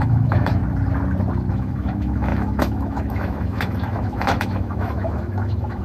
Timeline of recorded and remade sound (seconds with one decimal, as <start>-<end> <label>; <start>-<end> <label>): 0.0-0.6 remade; 0.6-1.5 recorded; 1.5-5.8 remade